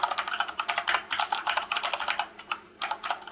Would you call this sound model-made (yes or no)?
no